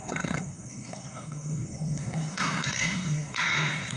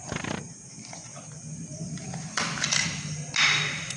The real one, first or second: second